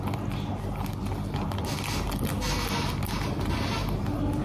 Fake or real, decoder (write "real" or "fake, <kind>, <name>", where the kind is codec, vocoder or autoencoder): real